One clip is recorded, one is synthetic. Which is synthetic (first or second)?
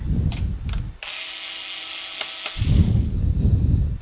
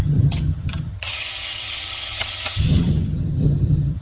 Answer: second